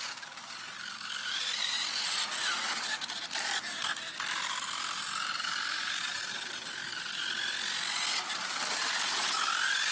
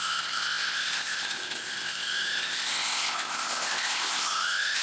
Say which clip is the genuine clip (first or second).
first